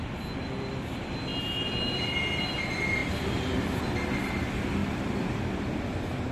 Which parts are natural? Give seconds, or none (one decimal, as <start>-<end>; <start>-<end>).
0.0-1.3; 2.6-3.0; 3.8-4.8; 5.4-6.3